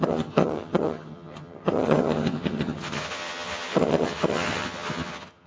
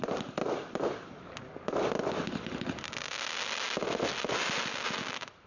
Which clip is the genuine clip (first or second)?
second